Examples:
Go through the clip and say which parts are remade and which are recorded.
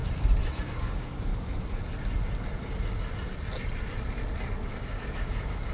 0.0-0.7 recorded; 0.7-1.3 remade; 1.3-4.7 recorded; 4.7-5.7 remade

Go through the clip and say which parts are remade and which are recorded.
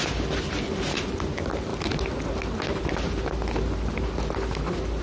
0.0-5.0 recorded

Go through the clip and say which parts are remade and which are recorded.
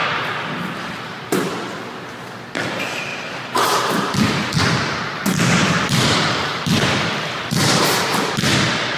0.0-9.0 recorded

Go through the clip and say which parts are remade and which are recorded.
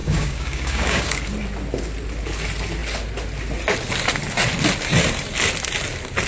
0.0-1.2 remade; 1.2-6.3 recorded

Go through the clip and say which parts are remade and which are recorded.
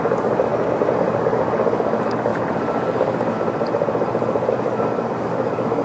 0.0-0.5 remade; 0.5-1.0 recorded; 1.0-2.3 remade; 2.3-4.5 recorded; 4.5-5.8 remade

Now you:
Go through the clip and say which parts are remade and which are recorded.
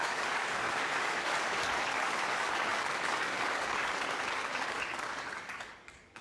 0.0-6.2 remade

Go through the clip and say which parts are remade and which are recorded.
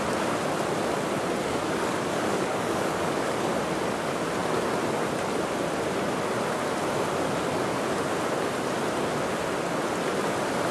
0.0-1.4 recorded; 1.4-3.5 remade; 3.5-10.7 recorded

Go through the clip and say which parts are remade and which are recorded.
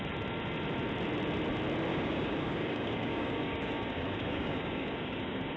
0.0-1.9 recorded; 1.9-5.6 remade